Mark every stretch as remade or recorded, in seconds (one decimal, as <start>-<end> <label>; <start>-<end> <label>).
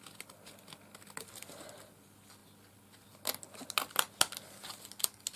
0.0-5.4 recorded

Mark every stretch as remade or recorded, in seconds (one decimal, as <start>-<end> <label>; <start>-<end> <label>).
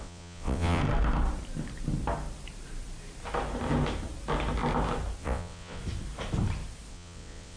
0.0-0.8 remade; 0.8-5.2 recorded; 5.2-5.8 remade; 5.8-6.9 recorded; 6.9-7.6 remade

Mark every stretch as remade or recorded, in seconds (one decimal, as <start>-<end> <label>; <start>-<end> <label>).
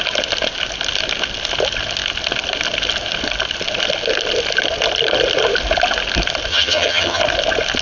0.0-6.5 recorded; 6.5-7.2 remade; 7.2-7.8 recorded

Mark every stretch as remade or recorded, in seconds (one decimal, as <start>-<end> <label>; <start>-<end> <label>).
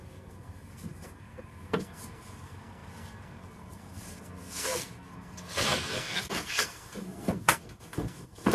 0.0-8.5 remade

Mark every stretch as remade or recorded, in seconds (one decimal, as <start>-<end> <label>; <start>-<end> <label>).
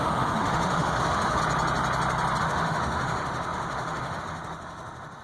0.0-1.4 remade; 1.4-2.4 recorded; 2.4-5.2 remade